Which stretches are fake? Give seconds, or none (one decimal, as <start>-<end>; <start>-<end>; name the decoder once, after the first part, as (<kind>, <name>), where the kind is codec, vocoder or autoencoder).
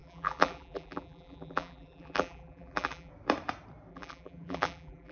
0.0-3.1 (vocoder, BigVGAN v2); 3.9-5.1